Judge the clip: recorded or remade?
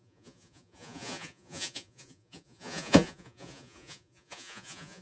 remade